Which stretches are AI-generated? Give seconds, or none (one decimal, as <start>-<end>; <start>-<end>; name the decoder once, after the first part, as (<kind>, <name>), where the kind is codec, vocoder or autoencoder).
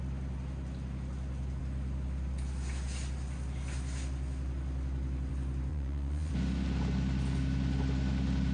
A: 5.7-6.3 (vocoder, Vocos)